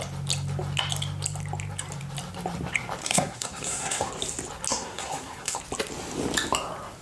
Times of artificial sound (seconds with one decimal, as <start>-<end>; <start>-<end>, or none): 3.0-4.1; 4.7-5.6